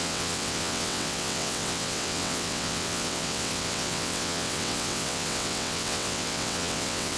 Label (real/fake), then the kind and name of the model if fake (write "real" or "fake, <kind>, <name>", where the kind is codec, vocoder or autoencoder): fake, vocoder, WaveNeXt